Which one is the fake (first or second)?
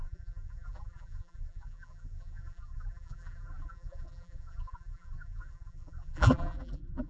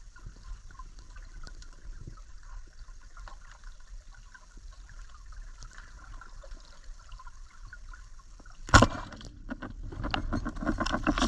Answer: first